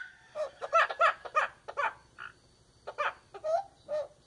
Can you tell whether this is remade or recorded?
recorded